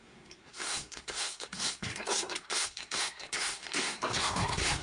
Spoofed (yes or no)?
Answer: yes